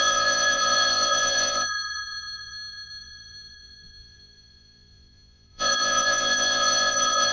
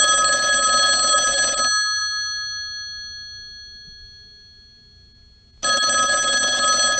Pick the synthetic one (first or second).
first